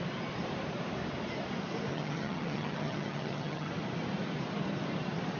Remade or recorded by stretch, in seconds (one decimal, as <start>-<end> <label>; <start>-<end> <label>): 0.0-1.9 recorded; 1.9-3.7 remade; 3.7-5.4 recorded

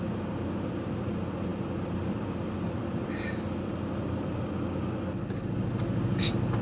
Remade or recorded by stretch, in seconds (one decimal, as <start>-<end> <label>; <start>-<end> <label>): 0.0-6.6 recorded

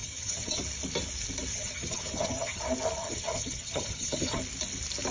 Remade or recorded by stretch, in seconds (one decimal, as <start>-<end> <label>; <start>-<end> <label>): 0.0-0.6 remade; 0.6-1.5 recorded; 1.5-2.6 remade; 2.6-3.0 recorded; 3.0-4.4 remade; 4.4-5.1 recorded

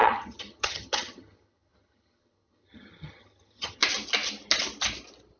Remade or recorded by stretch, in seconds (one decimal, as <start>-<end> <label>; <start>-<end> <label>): 0.0-3.8 remade; 3.8-5.4 recorded

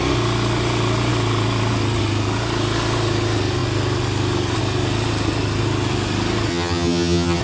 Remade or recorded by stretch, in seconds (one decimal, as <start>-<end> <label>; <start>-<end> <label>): 0.0-6.5 recorded; 6.5-7.4 remade

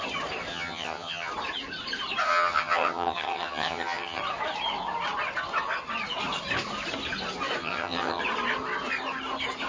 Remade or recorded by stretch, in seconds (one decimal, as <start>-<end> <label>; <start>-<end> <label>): 0.0-0.5 recorded; 0.5-1.3 remade; 1.3-2.3 recorded; 2.3-4.2 remade; 4.2-7.6 recorded; 7.6-8.2 remade; 8.2-9.7 recorded